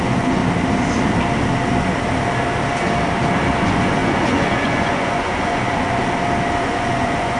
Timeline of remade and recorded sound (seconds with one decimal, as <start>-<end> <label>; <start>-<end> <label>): 0.0-0.4 remade; 0.4-3.6 recorded; 3.6-6.0 remade; 6.0-6.6 recorded; 6.6-7.4 remade